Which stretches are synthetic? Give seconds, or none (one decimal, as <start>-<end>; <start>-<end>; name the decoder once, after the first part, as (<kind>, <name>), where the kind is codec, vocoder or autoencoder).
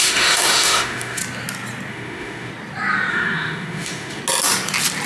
0.0-1.2 (autoencoder, DAC-VAE); 1.9-2.5; 3.1-4.2